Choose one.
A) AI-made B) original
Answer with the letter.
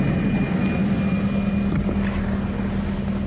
B